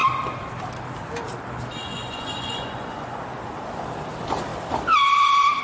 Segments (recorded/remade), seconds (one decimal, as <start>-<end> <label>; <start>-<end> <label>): 0.0-1.8 recorded; 1.8-3.2 remade; 3.2-5.6 recorded